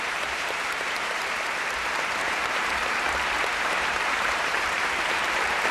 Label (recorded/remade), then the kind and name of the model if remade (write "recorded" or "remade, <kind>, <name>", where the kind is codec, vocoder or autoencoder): remade, vocoder, BigVGAN v2